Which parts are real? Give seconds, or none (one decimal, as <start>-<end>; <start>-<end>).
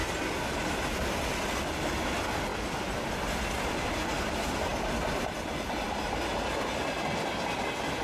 0.0-8.0